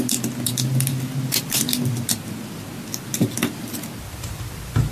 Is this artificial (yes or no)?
no